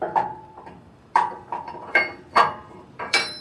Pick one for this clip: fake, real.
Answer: fake